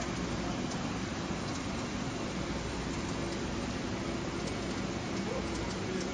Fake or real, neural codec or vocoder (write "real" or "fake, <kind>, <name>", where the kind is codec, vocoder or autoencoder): real